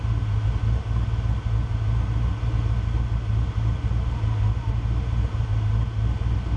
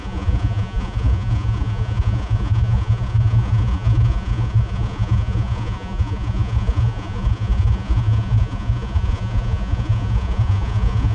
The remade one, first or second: second